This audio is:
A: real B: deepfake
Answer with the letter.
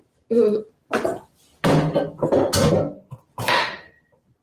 A